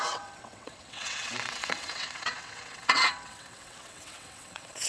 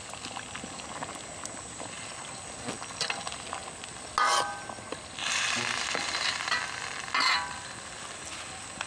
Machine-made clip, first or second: first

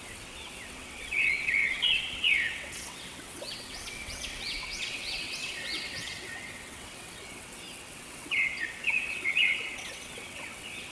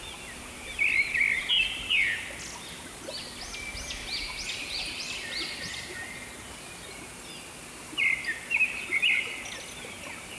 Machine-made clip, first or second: first